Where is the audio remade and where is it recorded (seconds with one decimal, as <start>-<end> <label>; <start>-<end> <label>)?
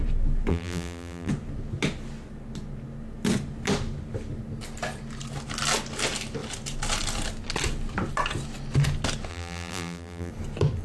0.0-0.5 recorded; 0.5-1.3 remade; 1.3-9.3 recorded; 9.3-10.3 remade; 10.3-10.8 recorded